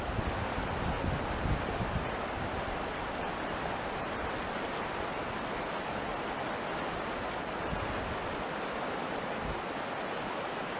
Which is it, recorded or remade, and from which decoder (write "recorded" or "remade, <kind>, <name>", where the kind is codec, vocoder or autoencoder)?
recorded